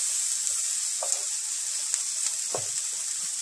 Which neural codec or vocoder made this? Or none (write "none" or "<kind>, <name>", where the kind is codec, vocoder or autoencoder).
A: none